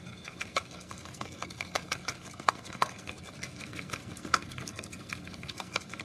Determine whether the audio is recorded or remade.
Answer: remade